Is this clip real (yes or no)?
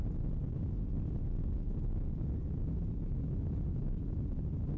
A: yes